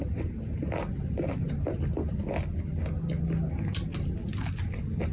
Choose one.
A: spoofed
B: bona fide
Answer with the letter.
B